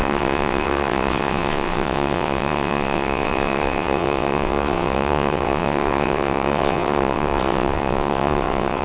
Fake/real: fake